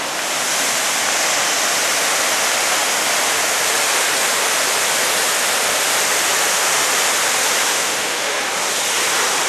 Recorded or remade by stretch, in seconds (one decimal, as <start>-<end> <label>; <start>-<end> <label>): 0.0-7.7 recorded; 7.7-8.4 remade; 8.4-9.5 recorded